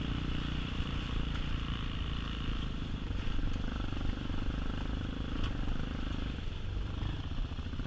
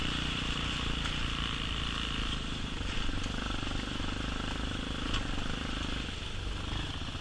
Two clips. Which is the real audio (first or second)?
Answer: second